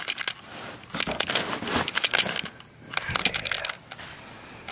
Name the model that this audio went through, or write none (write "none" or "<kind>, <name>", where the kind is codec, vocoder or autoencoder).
none